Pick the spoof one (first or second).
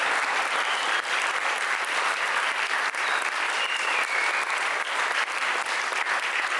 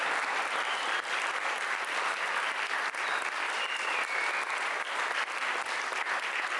first